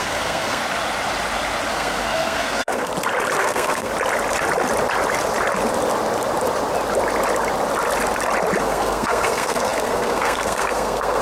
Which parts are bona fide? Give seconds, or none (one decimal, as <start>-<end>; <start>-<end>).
0.6-1.7; 2.9-3.4; 3.9-8.6